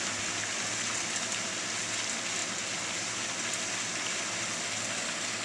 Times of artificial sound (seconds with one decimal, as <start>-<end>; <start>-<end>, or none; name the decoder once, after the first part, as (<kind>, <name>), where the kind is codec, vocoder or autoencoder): none